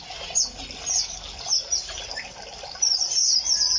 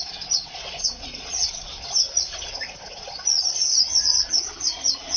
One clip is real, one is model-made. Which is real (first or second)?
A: first